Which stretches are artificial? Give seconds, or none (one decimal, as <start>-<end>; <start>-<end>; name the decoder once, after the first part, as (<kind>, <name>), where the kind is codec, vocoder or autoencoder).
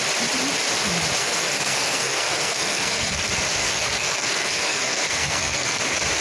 1.2-3.2 (codec, SNAC); 3.6-5.8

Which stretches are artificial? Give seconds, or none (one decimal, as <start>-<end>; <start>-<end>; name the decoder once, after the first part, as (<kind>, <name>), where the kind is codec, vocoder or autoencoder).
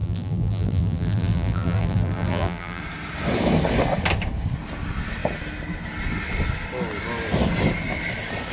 0.0-2.8 (vocoder, BigVGAN v2)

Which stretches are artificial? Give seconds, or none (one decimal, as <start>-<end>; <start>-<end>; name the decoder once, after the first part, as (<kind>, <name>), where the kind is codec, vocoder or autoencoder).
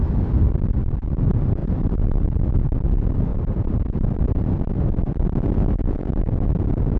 1.6-2.6 (vocoder, BigVGAN v2); 3.3-4.2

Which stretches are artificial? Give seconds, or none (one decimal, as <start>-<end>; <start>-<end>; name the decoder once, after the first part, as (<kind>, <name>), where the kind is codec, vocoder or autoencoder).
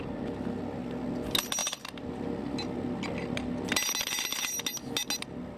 none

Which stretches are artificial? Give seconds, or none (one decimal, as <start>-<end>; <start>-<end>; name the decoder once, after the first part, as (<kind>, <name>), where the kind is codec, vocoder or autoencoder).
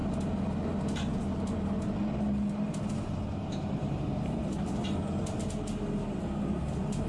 none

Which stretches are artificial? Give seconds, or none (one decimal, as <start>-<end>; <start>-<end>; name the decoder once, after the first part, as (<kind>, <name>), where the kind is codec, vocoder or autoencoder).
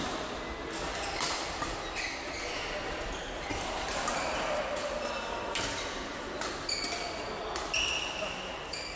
none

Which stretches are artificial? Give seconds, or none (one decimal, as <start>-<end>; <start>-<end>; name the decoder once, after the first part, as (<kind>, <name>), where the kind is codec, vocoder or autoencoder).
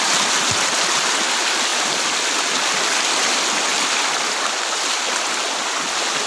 none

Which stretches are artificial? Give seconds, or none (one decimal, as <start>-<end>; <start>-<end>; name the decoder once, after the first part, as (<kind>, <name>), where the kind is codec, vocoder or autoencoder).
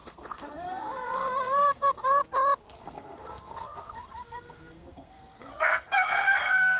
0.0-2.2 (codec, SNAC); 2.7-6.8